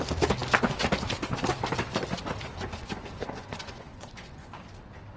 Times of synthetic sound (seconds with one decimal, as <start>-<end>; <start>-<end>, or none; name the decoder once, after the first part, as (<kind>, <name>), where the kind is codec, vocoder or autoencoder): 2.5-4.6 (vocoder, Vocos)